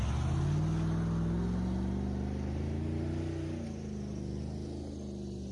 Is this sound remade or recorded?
recorded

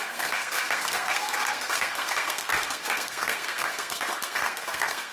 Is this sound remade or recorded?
remade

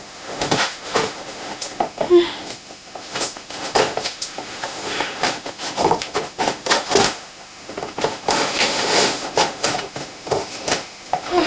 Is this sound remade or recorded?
remade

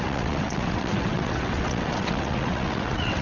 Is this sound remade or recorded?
remade